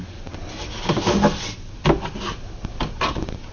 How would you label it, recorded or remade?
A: recorded